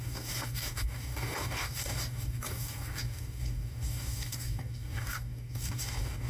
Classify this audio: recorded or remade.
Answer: remade